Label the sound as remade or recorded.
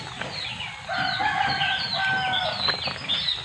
recorded